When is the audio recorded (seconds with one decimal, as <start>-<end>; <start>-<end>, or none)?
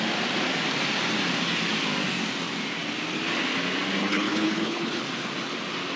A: 0.0-4.0; 5.0-6.0